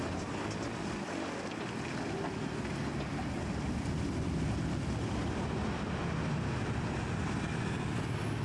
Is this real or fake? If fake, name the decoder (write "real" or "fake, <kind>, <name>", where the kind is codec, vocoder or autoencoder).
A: real